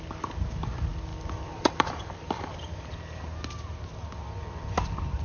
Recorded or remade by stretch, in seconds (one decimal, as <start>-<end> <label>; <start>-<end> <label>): 0.0-1.1 recorded; 1.1-3.2 remade; 3.2-5.2 recorded